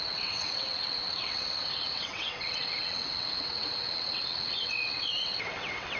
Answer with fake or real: fake